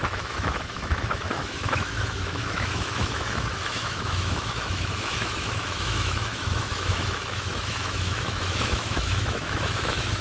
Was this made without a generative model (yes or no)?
no